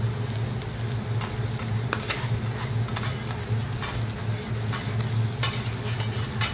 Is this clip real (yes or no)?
yes